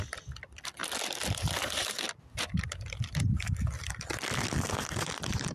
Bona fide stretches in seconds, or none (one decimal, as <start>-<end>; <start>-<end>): 0.0-5.5